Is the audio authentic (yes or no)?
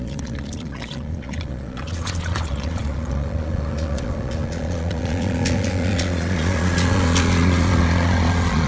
no